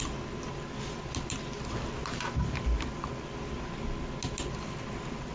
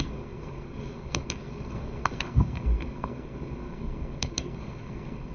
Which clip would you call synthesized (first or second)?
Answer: second